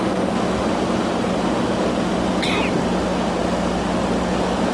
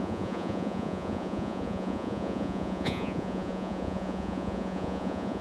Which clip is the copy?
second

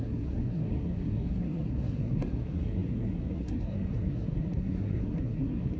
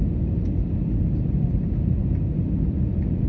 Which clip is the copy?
first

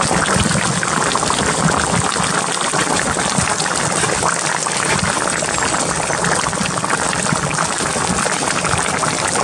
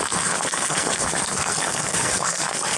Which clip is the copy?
second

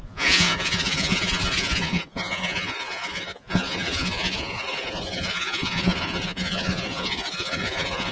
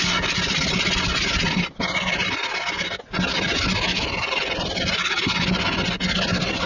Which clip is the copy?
first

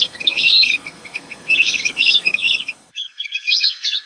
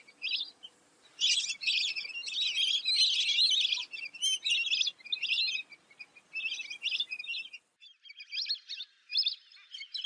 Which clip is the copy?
first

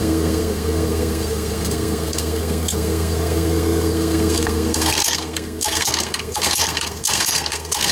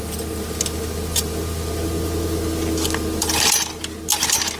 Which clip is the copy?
first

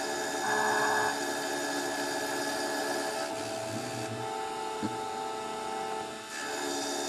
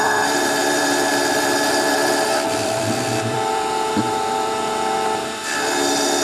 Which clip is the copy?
second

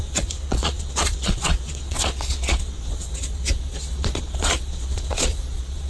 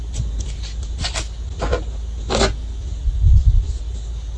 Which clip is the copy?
first